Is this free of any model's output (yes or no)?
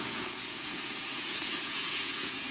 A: no